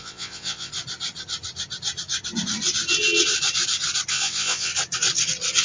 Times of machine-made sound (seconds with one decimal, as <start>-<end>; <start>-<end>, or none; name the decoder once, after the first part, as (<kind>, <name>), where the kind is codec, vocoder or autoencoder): 0.0-0.7 (vocoder, WaveNeXt); 4.1-4.7